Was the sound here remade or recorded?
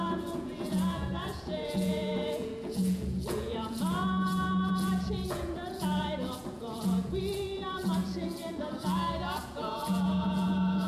remade